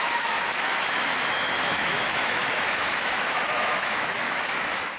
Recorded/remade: remade